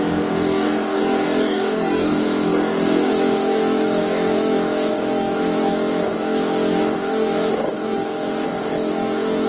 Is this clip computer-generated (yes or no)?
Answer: yes